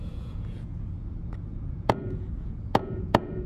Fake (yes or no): yes